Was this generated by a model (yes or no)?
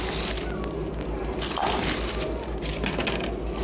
no